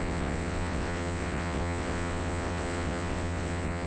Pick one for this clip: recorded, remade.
remade